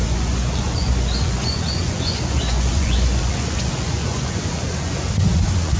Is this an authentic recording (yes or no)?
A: no